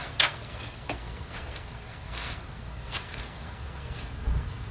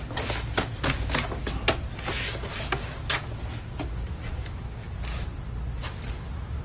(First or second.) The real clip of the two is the second